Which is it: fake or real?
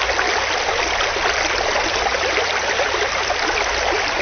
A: real